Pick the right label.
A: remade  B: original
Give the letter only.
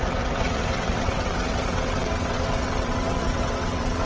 A